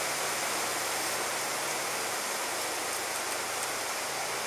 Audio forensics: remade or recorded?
recorded